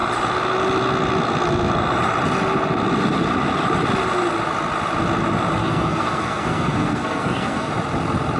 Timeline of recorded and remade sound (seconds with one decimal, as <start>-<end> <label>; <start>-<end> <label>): 0.0-5.6 recorded; 5.6-7.7 remade; 7.7-8.4 recorded